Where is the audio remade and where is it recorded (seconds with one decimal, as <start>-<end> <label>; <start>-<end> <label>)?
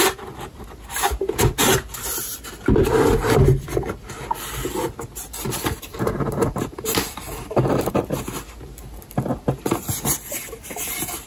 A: 0.0-5.9 recorded; 5.9-7.9 remade; 7.9-11.3 recorded